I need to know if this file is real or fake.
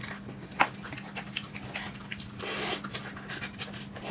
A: real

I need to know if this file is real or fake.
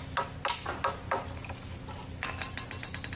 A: real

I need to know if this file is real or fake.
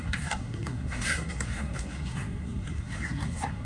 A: fake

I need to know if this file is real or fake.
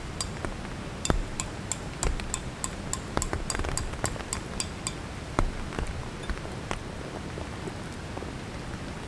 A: real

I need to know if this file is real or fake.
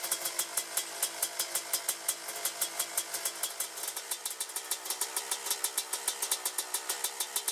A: real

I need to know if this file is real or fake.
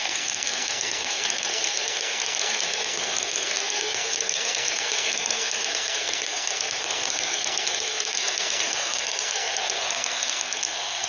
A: fake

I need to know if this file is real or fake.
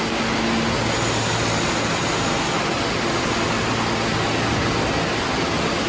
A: real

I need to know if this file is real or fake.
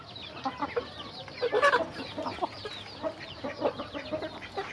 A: real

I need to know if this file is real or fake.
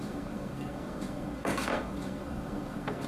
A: fake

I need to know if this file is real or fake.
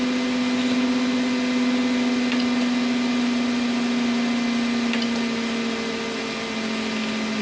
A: real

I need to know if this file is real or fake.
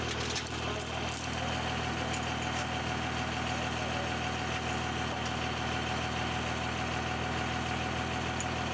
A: real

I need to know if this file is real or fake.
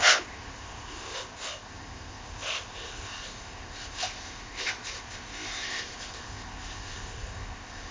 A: fake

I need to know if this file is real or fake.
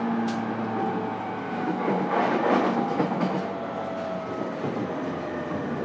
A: real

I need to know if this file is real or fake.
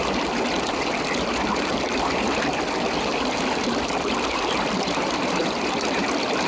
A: fake